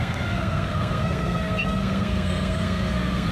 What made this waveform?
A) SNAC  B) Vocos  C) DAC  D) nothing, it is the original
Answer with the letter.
A